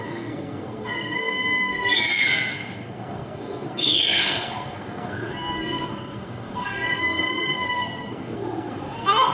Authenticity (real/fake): fake